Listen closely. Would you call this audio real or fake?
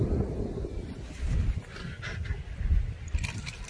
fake